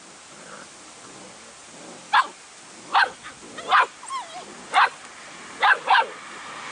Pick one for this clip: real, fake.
real